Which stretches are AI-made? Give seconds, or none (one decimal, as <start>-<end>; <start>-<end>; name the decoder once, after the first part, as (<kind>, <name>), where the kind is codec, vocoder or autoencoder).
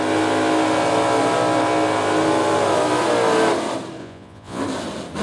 4.0-4.6 (vocoder, Vocos)